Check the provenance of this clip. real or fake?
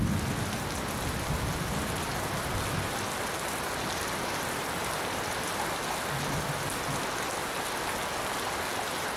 real